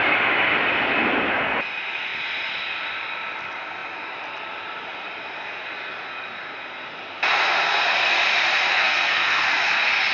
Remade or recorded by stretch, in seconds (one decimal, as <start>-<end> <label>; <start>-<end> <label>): 0.0-8.7 recorded; 8.7-9.5 remade; 9.5-10.1 recorded